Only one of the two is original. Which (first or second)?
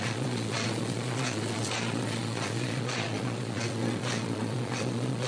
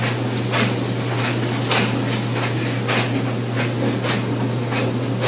second